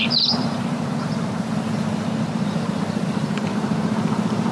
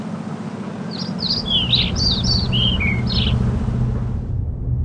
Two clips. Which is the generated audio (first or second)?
first